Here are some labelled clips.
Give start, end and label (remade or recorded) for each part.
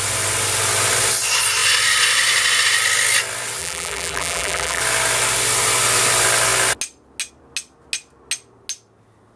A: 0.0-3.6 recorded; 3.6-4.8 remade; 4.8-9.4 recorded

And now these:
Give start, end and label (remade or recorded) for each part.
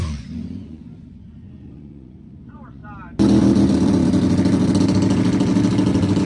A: 0.0-2.8 remade; 2.8-6.2 recorded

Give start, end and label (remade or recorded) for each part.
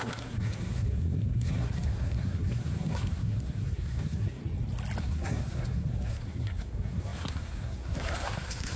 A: 0.0-4.4 remade; 4.4-5.0 recorded; 5.0-8.8 remade